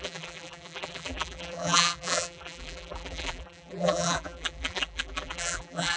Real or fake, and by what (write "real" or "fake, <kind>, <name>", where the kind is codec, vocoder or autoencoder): fake, vocoder, BigVGAN v2